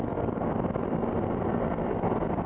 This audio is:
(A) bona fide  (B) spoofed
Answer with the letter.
B